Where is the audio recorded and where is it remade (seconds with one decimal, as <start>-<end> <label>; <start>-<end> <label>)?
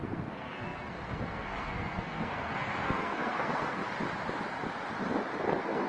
0.0-3.8 remade; 3.8-5.5 recorded; 5.5-5.9 remade